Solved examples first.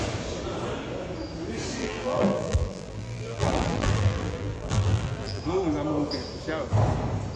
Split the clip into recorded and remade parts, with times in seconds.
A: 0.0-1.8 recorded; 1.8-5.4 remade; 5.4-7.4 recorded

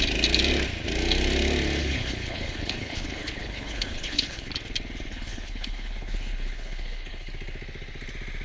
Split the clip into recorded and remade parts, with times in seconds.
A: 0.0-1.8 recorded; 1.8-4.5 remade; 4.5-5.1 recorded; 5.1-7.3 remade; 7.3-8.4 recorded

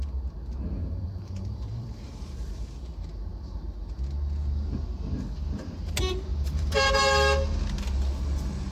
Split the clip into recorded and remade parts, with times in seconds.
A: 0.0-0.8 recorded; 0.8-2.5 remade; 2.5-6.3 recorded; 6.3-6.9 remade; 6.9-8.7 recorded